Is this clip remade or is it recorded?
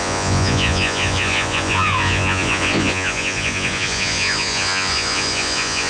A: remade